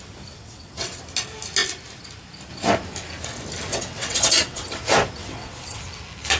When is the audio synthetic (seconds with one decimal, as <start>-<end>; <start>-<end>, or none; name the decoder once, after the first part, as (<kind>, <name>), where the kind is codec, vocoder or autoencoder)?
0.4-1.0 (vocoder, WaveNeXt); 3.7-4.8; 5.2-5.8